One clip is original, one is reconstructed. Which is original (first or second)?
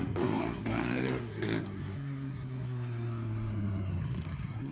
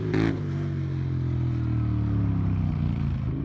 second